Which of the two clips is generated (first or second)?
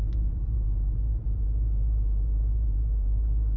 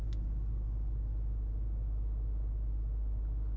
first